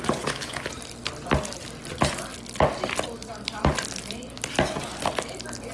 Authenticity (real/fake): real